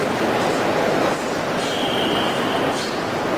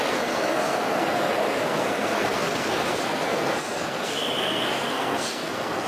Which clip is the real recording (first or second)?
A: first